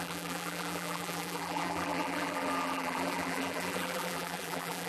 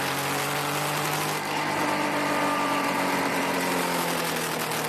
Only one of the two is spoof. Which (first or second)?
first